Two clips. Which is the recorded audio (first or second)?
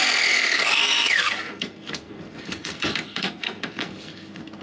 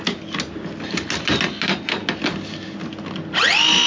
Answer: second